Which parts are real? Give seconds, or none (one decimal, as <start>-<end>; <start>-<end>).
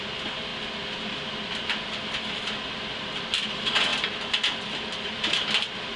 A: 0.0-6.0